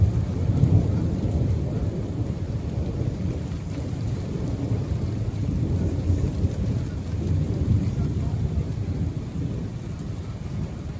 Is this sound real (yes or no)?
no